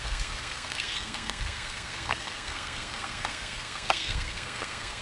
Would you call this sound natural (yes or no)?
no